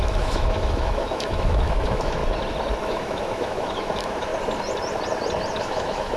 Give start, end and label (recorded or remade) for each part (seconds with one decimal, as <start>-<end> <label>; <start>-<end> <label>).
0.0-2.2 remade; 2.2-2.8 recorded; 2.8-4.3 remade; 4.3-5.6 recorded; 5.6-6.2 remade